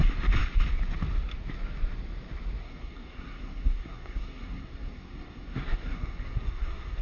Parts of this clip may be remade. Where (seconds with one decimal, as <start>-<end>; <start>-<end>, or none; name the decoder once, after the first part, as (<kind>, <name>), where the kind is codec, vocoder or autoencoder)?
2.6-7.0 (codec, SNAC)